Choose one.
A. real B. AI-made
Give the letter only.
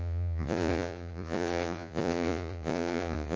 B